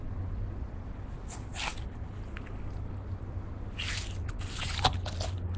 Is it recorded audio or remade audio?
recorded